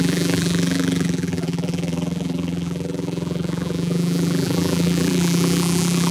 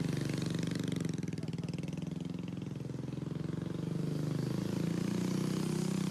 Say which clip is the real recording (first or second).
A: second